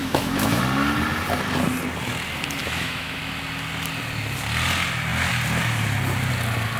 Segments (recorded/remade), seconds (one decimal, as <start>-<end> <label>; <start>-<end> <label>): 0.0-0.6 remade; 0.6-2.6 recorded; 2.6-3.2 remade; 3.2-6.8 recorded